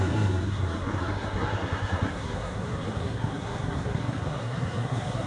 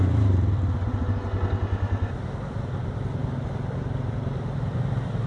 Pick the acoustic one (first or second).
second